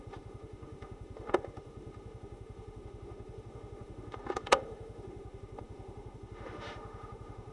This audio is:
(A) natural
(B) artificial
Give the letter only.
B